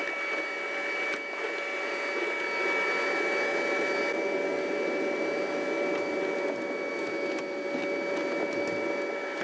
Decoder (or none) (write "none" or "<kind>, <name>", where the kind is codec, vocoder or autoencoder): none